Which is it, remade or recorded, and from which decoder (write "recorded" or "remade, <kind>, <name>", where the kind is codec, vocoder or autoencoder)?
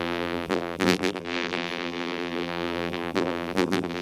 remade, vocoder, BigVGAN v2